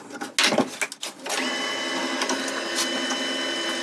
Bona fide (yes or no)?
yes